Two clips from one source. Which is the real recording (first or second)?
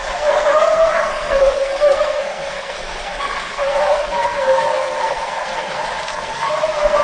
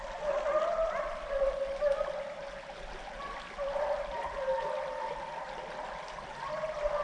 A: second